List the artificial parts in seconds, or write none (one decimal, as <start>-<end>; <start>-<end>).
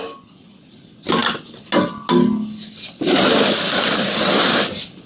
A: none